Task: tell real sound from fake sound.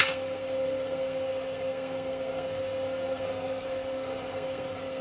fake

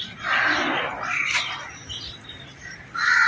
real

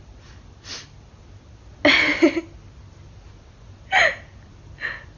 real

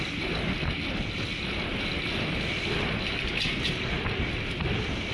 real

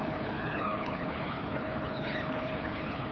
fake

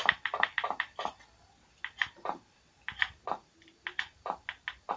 real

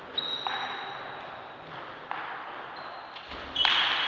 real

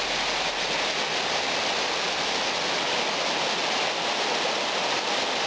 real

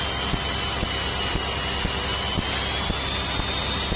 real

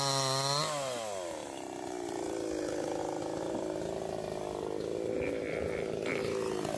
real